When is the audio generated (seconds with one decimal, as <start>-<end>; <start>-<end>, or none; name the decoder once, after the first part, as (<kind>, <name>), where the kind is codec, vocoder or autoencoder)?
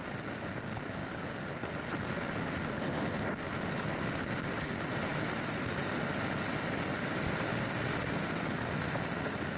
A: none